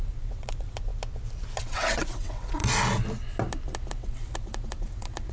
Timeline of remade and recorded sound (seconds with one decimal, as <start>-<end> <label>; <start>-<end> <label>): 0.0-0.9 remade; 0.9-1.6 recorded; 1.6-2.6 remade; 2.6-3.9 recorded; 3.9-5.3 remade